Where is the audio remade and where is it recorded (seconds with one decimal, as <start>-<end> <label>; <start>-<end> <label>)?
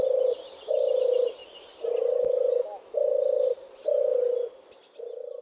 0.0-5.4 recorded